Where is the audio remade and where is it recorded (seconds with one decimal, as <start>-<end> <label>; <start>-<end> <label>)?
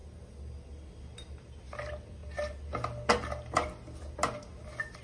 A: 0.0-5.0 recorded